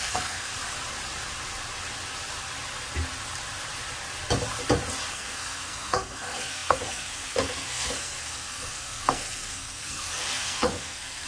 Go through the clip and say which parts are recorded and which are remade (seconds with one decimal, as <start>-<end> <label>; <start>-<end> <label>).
0.0-0.5 remade; 0.5-5.1 recorded; 5.1-11.3 remade